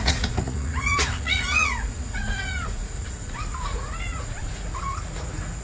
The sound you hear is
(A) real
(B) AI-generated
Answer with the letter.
B